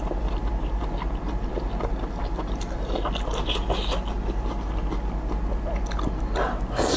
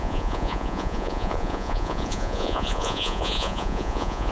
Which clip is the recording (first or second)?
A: first